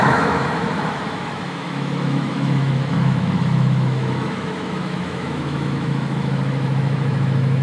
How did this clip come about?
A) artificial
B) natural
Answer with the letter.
A